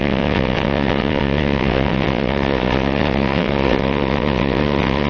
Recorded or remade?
remade